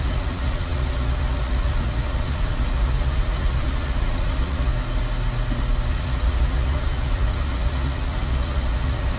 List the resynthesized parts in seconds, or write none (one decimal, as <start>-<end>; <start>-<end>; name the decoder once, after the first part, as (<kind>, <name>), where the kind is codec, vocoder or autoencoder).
0.0-4.7 (vocoder, Vocos); 5.9-9.2